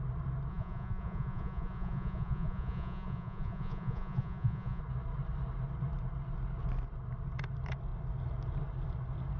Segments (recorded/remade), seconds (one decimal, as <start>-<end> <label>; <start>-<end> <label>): 0.0-0.5 recorded; 0.5-4.8 remade; 4.8-9.4 recorded